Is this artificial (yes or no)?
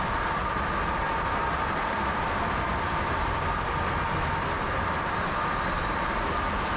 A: no